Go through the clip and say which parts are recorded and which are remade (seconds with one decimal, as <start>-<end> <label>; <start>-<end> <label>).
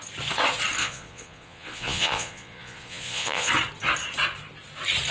0.0-0.8 recorded; 0.8-3.5 remade; 3.5-5.1 recorded